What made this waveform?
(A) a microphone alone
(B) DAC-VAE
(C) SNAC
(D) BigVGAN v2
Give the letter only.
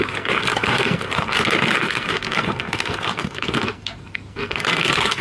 C